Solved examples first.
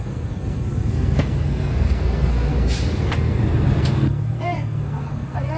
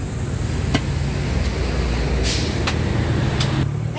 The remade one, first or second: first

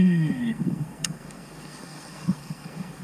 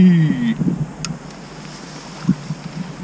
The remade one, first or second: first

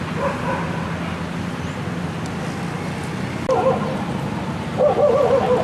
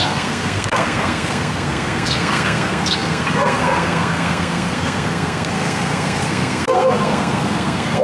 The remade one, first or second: second